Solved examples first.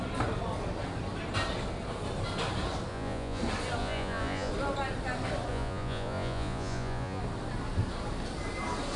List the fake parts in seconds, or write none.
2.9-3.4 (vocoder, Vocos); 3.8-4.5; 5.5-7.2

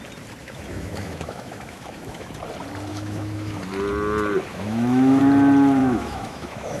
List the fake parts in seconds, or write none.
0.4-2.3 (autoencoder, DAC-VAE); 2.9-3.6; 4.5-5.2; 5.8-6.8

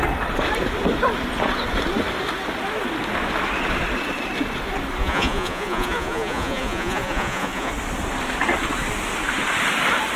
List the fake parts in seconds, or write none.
5.0-7.7 (vocoder, Vocos)